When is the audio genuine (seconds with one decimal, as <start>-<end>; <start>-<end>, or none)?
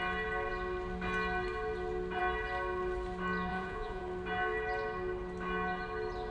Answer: 0.0-3.5; 4.0-6.3